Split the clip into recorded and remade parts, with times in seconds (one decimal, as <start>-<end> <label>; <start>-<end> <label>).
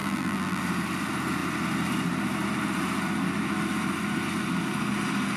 0.0-0.6 remade; 0.6-5.4 recorded